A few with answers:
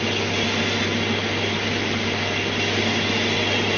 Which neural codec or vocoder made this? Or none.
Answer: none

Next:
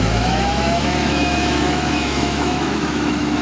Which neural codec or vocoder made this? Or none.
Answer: autoencoder, DAC-VAE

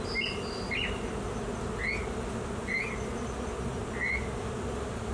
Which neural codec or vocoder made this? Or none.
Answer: none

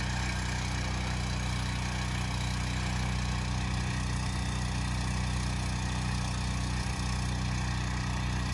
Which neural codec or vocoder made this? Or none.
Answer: none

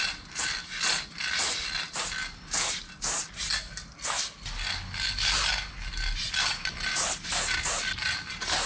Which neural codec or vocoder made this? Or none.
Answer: none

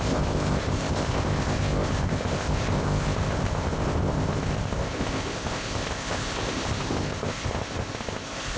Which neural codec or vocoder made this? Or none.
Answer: codec, ZipCodec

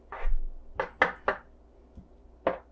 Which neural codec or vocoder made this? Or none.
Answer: none